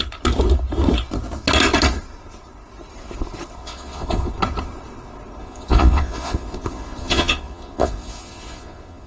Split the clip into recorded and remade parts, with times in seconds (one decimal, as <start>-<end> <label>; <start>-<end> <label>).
0.0-3.6 recorded; 3.6-4.3 remade; 4.3-5.4 recorded; 5.4-9.1 remade